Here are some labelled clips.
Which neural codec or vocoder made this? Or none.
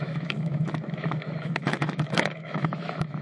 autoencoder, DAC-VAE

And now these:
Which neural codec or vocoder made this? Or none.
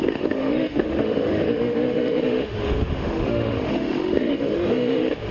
autoencoder, DAC-VAE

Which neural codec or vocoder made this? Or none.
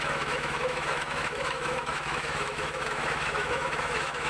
autoencoder, DAC-VAE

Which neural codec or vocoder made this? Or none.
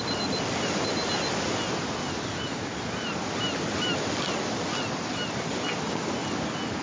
none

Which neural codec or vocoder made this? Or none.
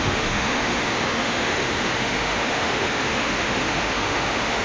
autoencoder, DAC-VAE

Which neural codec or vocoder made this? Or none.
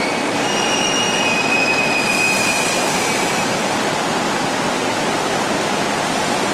none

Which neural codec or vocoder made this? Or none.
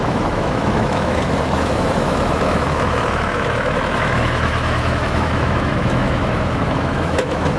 autoencoder, DAC-VAE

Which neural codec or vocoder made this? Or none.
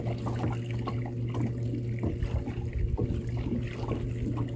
none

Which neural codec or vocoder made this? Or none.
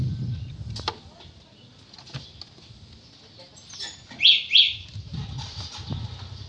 none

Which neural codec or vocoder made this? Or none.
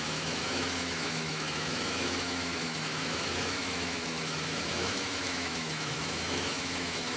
autoencoder, DAC-VAE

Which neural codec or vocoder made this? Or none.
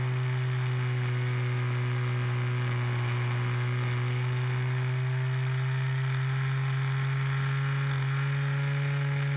none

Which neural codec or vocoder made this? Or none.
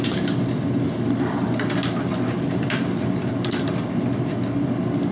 none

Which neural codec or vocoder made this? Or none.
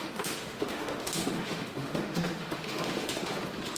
autoencoder, DAC-VAE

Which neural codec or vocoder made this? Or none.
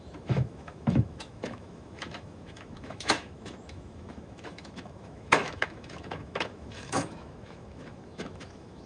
autoencoder, DAC-VAE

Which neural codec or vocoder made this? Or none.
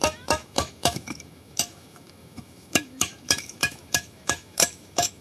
autoencoder, DAC-VAE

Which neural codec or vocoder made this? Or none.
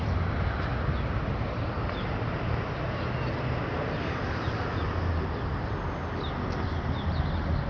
none